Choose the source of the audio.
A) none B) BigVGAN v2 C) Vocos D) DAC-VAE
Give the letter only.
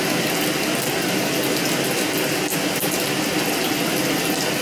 A